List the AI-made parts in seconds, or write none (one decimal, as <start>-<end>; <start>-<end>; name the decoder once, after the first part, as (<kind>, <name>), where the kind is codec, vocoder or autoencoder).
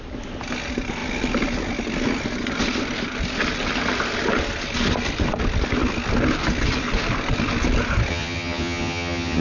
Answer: 8.1-9.4 (vocoder, HiFi-GAN)